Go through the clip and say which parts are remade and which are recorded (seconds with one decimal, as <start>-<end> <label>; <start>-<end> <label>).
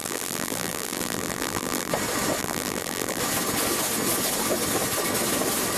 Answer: 0.0-1.9 remade; 1.9-2.4 recorded; 2.4-3.2 remade; 3.2-5.8 recorded